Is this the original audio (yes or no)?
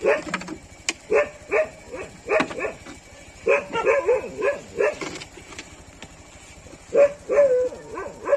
yes